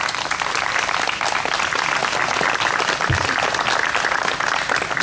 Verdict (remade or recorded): recorded